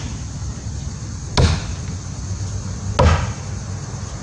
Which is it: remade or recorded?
recorded